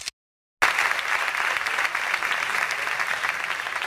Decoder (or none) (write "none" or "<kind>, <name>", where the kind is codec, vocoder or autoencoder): none